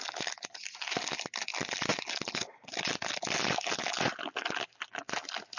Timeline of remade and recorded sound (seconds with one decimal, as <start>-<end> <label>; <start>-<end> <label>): 0.0-5.6 recorded

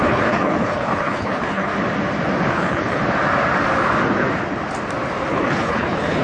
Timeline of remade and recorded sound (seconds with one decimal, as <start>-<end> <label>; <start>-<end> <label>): 0.0-1.7 remade; 1.7-2.5 recorded; 2.5-3.0 remade; 3.0-5.3 recorded; 5.3-6.2 remade

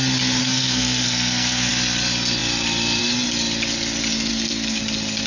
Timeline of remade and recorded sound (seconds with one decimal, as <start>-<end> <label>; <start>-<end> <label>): 0.0-0.4 recorded; 0.4-1.7 remade; 1.7-4.3 recorded; 4.3-4.8 remade; 4.8-5.3 recorded

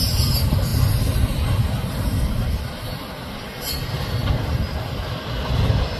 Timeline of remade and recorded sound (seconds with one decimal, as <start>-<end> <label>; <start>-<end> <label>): 0.0-6.0 recorded

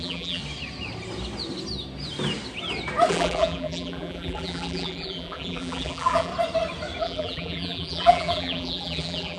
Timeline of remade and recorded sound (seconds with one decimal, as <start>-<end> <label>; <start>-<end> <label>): 0.0-0.4 remade; 0.4-3.1 recorded; 3.1-6.3 remade; 6.3-7.0 recorded; 7.0-9.4 remade

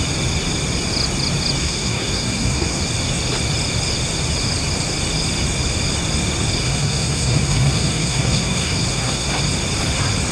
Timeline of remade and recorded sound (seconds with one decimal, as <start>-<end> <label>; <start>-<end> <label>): 0.0-1.6 recorded; 1.6-2.8 remade; 2.8-6.6 recorded; 6.6-9.4 remade; 9.4-10.3 recorded

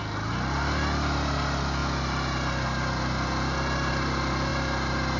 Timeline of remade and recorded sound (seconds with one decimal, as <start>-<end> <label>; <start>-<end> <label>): 0.0-5.2 recorded